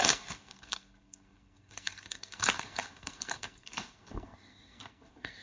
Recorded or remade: remade